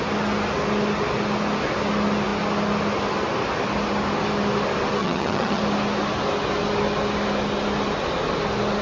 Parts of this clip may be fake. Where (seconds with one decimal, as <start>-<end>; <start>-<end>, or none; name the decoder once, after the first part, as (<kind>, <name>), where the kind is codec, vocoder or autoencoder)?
5.0-5.6 (vocoder, HiFi-GAN)